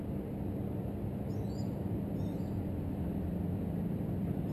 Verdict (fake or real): real